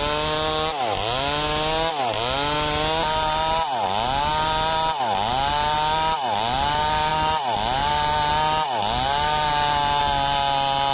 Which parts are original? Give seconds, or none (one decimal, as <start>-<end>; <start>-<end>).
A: 0.0-10.9